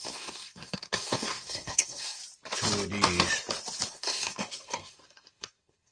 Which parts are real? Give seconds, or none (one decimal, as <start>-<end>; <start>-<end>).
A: 2.2-3.9